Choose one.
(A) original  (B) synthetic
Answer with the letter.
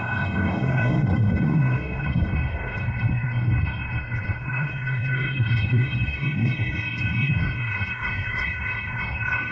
B